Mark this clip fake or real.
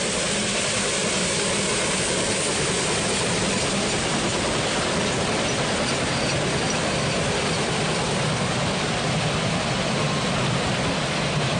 real